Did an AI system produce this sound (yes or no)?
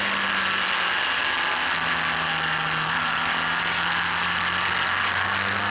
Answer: no